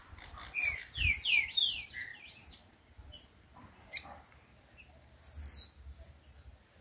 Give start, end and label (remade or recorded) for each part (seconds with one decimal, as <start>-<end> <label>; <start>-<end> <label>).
0.0-6.8 recorded